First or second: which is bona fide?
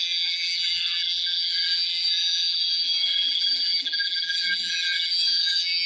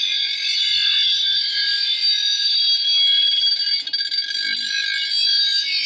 second